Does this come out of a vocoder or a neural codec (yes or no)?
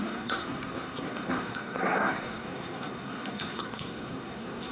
yes